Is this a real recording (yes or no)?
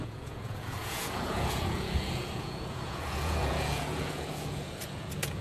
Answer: no